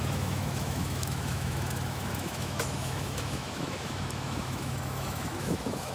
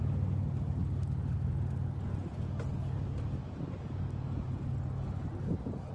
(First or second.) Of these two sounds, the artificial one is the first